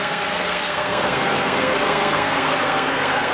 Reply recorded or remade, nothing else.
remade